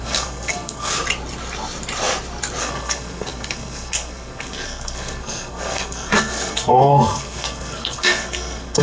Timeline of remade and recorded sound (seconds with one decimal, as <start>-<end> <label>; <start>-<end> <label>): 0.0-0.9 remade; 0.9-2.6 recorded; 2.6-8.8 remade